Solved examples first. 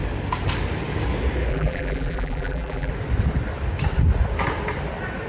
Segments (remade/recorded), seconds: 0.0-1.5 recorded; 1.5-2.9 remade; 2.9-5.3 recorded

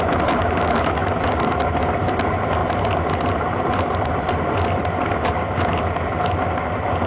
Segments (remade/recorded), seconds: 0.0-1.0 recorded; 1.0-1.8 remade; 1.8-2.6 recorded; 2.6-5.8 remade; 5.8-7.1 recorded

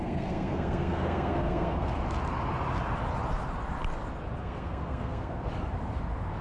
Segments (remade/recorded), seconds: 0.0-2.0 remade; 2.0-4.4 recorded; 4.4-5.5 remade; 5.5-6.4 recorded